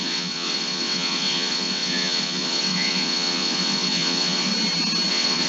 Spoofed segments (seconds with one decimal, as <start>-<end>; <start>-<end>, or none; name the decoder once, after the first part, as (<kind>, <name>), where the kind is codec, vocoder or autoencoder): 0.0-4.5 (vocoder, WaveNeXt); 5.1-5.5